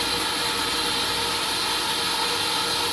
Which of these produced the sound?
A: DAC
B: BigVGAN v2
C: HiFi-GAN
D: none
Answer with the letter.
D